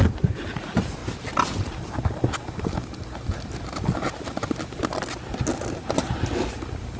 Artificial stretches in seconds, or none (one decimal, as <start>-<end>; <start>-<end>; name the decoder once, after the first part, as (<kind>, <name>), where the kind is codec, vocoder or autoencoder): none